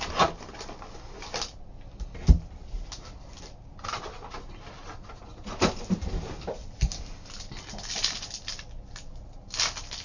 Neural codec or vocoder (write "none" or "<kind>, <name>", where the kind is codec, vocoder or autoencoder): none